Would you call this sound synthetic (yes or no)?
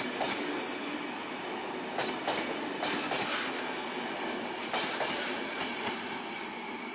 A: no